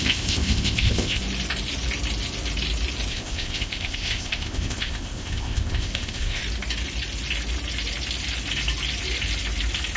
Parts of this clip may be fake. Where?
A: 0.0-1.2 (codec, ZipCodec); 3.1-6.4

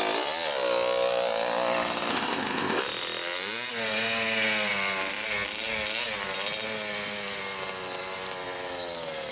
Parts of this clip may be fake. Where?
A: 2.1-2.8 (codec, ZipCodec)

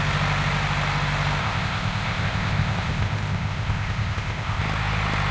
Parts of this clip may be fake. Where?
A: 1.4-4.6 (codec, ZipCodec)